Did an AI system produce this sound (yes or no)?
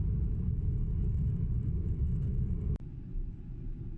no